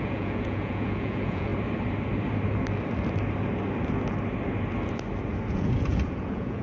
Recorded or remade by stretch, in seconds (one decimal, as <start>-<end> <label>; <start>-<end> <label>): 0.0-1.5 remade; 1.5-5.5 recorded; 5.5-6.6 remade